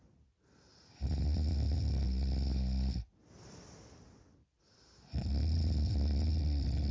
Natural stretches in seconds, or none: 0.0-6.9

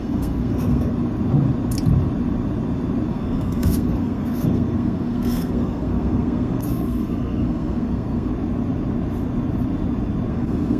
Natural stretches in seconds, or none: 0.9-3.1; 8.3-10.3